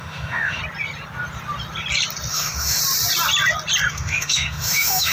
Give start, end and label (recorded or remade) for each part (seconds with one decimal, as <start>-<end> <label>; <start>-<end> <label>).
0.0-0.6 remade; 0.6-2.3 recorded; 2.3-2.8 remade; 2.8-3.9 recorded; 3.9-5.1 remade